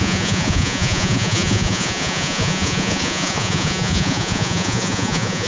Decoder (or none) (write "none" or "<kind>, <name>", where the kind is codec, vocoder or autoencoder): vocoder, Vocos